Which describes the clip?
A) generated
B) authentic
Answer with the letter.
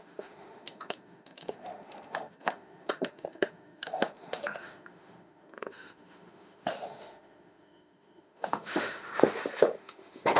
A